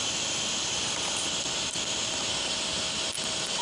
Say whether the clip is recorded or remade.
recorded